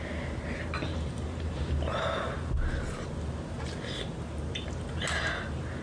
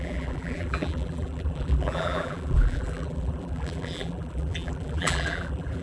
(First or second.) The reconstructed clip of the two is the second